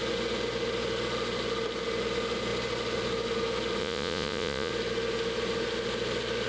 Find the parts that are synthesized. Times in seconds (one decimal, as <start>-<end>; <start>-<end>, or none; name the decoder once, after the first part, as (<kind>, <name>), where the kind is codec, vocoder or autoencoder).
3.8-4.7 (vocoder, Vocos)

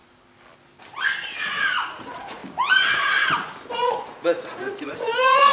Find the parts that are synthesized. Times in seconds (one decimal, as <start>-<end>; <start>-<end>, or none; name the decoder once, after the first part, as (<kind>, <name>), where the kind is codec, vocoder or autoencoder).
1.4-2.4 (vocoder, Vocos); 3.7-5.5

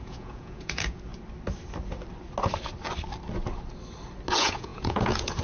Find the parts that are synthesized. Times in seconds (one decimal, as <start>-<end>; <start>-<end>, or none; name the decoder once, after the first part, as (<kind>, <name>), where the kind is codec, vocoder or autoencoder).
0.0-1.1 (vocoder, Vocos); 4.3-5.4

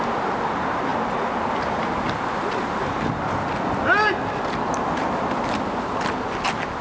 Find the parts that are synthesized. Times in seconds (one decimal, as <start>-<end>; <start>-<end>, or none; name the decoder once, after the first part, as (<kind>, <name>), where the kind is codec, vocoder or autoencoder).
none

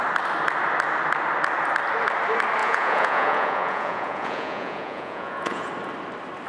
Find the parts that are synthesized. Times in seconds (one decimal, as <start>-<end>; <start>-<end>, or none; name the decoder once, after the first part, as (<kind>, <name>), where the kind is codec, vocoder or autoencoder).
2.6-5.7 (vocoder, Vocos)

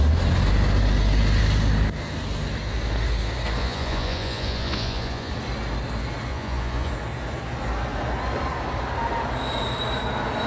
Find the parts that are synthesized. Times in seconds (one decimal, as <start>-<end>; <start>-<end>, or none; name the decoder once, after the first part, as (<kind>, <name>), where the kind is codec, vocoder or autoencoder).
3.6-5.3 (vocoder, Vocos); 6.3-6.9